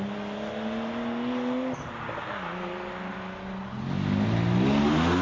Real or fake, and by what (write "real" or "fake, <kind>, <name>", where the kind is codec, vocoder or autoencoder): real